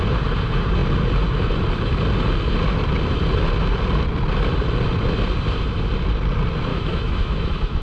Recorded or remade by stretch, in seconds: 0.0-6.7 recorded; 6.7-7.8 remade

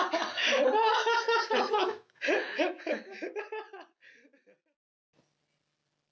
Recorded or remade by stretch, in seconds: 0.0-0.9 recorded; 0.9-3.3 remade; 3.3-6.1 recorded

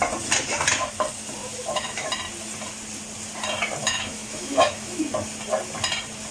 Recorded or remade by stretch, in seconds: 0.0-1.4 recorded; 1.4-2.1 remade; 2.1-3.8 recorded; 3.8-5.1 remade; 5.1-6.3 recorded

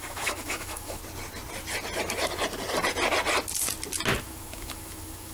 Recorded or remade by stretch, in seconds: 0.0-1.0 remade; 1.0-4.2 recorded; 4.2-5.3 remade